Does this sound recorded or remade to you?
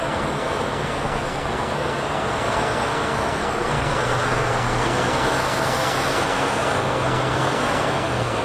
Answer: remade